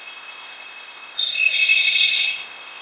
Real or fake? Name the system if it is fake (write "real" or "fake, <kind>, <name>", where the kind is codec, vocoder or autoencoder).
fake, codec, ZipCodec